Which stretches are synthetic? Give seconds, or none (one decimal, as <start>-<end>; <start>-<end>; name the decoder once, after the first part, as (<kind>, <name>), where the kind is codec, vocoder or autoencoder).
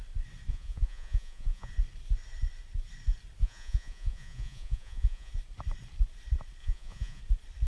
0.5-1.7 (vocoder, Vocos); 3.4-5.3; 6.6-7.2